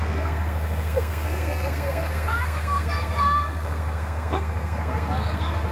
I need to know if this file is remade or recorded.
remade